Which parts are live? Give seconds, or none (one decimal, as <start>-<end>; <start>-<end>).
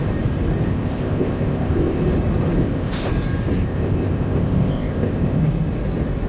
0.0-0.7; 2.0-2.6; 3.1-3.6; 5.4-6.3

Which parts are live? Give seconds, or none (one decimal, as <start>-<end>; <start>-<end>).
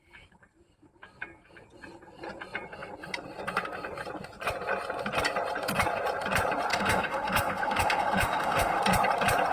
0.0-6.7; 8.8-9.5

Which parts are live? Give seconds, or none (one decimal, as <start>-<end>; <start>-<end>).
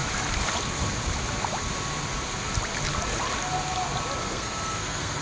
0.0-4.2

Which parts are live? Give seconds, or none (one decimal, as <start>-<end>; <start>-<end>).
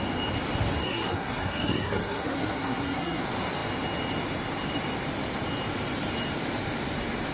0.0-0.8; 3.2-7.3